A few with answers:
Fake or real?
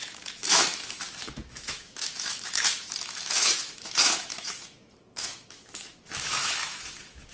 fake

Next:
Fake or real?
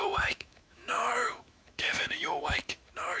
fake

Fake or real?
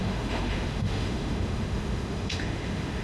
fake